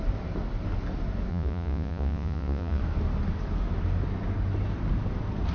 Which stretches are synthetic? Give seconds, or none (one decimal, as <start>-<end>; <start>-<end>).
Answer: 1.3-2.8